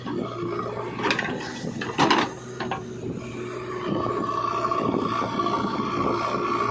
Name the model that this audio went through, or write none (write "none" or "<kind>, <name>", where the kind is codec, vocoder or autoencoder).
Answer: none